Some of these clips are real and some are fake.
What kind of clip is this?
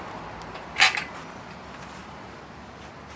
real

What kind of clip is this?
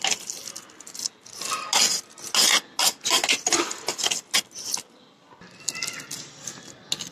real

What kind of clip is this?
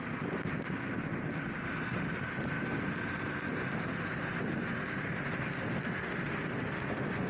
real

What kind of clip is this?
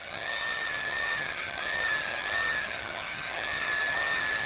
fake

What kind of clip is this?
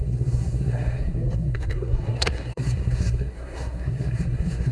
fake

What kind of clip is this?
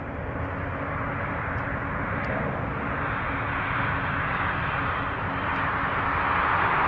real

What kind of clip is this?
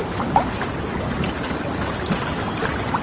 real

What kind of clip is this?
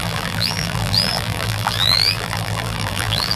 fake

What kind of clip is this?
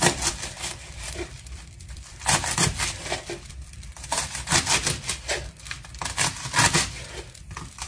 fake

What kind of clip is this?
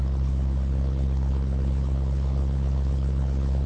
fake